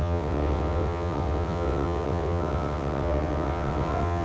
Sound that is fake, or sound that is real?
fake